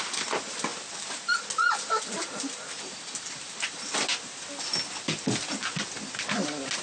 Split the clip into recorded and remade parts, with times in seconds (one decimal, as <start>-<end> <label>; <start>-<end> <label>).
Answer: 0.0-4.1 remade; 4.1-6.1 recorded; 6.1-6.8 remade